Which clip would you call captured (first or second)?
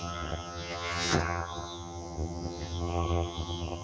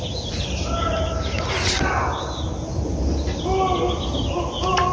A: second